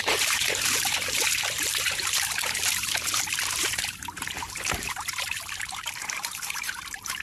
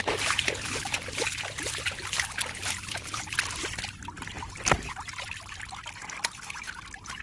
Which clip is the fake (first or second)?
first